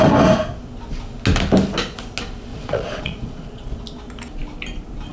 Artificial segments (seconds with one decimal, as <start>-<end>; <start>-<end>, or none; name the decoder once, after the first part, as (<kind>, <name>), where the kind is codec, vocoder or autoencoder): 2.5-3.8 (vocoder, Vocos)

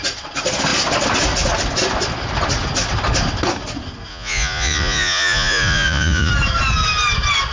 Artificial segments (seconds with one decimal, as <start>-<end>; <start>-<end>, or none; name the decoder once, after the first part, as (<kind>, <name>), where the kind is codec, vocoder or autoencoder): 4.1-6.3 (vocoder, Vocos)

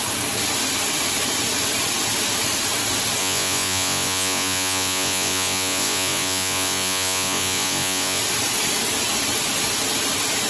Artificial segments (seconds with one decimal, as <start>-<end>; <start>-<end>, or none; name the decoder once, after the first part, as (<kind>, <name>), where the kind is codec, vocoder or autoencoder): 3.2-8.2 (vocoder, Vocos)

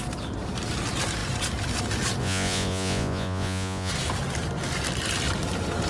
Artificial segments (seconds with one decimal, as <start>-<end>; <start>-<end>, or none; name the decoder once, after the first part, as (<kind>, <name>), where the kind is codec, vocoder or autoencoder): 2.2-3.9 (vocoder, Vocos)

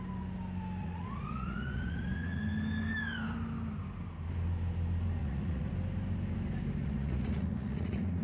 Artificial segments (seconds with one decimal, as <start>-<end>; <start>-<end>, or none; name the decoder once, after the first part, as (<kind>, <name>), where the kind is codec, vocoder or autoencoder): 0.8-2.4 (vocoder, Vocos); 5.2-5.7; 6.8-8.2